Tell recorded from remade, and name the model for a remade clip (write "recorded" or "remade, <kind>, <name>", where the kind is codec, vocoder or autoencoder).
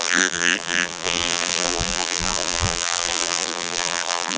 remade, vocoder, BigVGAN v2